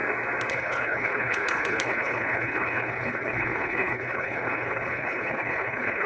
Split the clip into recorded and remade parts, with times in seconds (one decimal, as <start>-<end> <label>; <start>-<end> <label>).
0.0-0.5 recorded; 0.5-6.1 remade